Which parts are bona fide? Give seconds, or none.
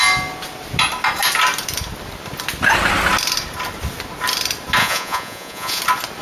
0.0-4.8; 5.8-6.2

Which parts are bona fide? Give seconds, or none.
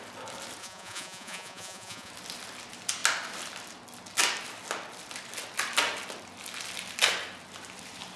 0.0-0.6; 2.1-8.2